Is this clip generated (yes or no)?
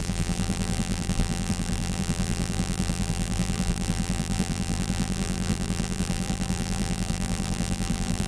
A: yes